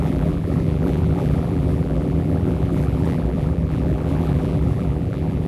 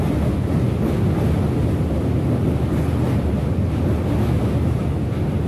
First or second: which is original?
second